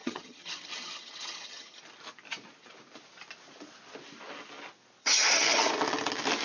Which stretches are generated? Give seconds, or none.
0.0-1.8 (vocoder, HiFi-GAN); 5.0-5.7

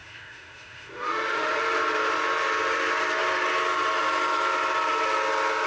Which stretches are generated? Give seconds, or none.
0.0-1.5 (autoencoder, DAC-VAE)

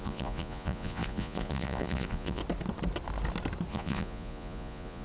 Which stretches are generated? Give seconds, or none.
0.0-2.4 (vocoder, Vocos); 3.7-5.0

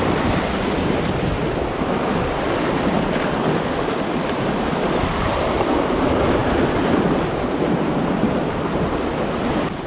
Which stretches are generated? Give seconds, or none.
none